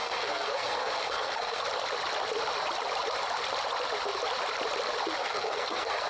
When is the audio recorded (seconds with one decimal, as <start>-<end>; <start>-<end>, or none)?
1.6-5.2